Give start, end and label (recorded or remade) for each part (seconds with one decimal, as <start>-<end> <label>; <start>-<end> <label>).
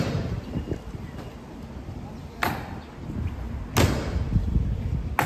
0.0-5.3 recorded